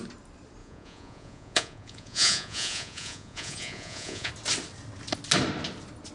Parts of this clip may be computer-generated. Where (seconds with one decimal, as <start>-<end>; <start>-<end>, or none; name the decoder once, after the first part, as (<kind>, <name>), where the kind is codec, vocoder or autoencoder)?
0.6-4.3 (vocoder, Vocos)